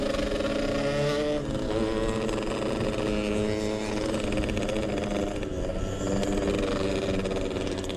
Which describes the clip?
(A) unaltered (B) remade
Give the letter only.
A